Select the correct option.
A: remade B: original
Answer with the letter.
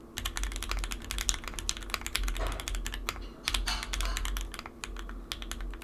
B